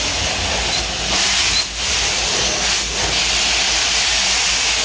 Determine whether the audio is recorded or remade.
recorded